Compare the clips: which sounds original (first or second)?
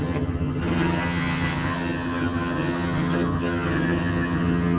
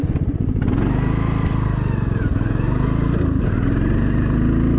second